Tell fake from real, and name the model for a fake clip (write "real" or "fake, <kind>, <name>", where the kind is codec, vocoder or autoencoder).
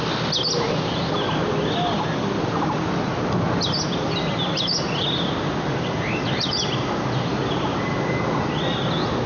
real